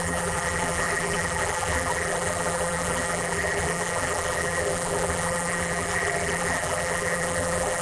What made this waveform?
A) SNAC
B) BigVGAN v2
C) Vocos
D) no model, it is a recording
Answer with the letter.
B